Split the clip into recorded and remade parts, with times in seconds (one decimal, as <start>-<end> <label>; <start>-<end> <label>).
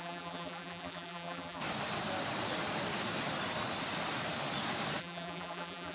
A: 0.0-1.6 remade; 1.6-5.0 recorded; 5.0-5.9 remade